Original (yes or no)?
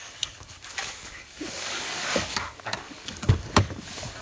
no